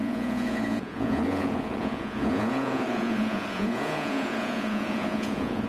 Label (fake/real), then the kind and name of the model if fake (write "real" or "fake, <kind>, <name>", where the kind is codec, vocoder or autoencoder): fake, vocoder, Vocos